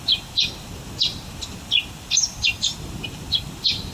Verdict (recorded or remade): recorded